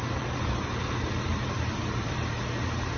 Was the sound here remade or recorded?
remade